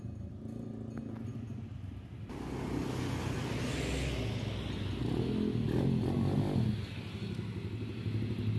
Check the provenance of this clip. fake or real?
real